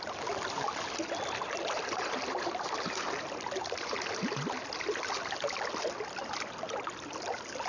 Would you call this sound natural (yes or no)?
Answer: yes